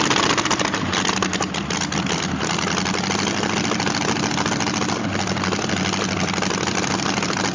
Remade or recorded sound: recorded